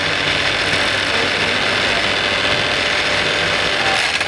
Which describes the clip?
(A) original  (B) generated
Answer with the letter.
A